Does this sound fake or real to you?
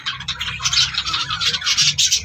real